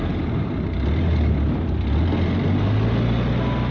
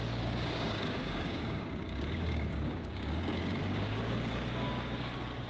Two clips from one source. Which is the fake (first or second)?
second